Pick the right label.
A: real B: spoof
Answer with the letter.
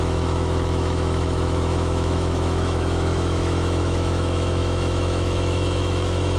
B